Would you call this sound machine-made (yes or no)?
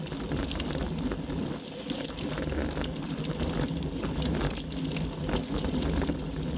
no